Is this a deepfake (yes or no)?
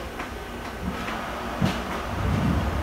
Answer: yes